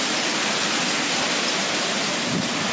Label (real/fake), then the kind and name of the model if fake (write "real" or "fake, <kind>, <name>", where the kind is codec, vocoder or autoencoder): real